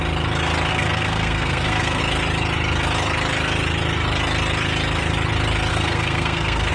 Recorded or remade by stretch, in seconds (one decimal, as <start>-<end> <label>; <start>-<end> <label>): 0.0-0.7 recorded; 0.7-2.0 remade; 2.0-5.7 recorded; 5.7-6.7 remade